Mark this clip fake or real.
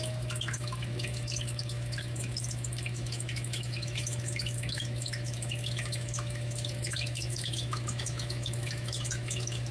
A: fake